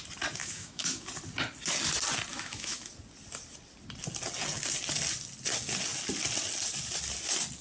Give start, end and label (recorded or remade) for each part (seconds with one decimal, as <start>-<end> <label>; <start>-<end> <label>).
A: 0.0-0.4 recorded; 0.4-1.1 remade; 1.1-2.3 recorded; 2.3-2.9 remade; 2.9-7.6 recorded